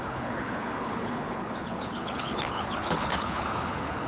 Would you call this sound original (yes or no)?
no